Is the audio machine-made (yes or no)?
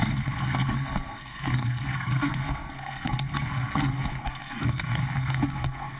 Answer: yes